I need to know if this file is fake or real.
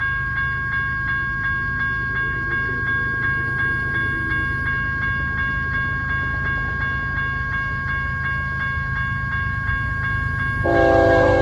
real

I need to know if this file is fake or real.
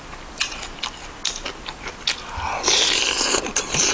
real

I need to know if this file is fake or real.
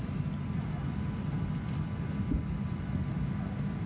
real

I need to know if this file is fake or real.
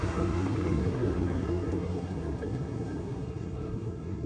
fake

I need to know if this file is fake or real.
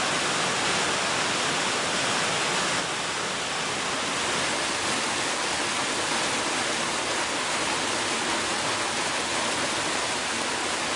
real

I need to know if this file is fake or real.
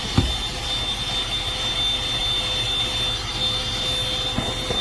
real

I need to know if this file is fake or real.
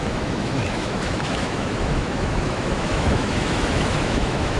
fake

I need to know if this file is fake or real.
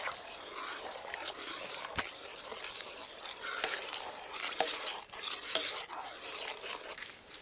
real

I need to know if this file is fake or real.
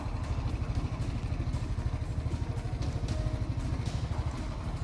real